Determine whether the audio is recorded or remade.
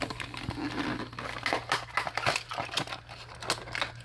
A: recorded